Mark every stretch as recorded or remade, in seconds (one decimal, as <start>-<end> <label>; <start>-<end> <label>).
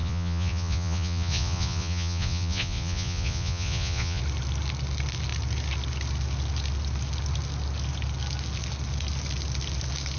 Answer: 0.0-4.2 remade; 4.2-10.2 recorded